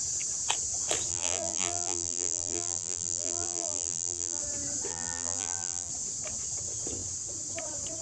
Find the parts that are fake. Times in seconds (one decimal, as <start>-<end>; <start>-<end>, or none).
1.1-4.4; 4.9-5.9